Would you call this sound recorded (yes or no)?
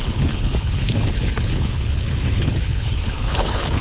no